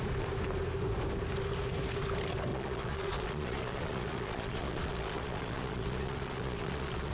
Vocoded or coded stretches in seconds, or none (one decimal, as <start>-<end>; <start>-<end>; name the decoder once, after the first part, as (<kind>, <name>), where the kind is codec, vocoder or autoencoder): 2.5-7.1 (vocoder, Vocos)